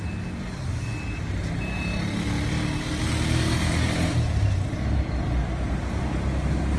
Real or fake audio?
real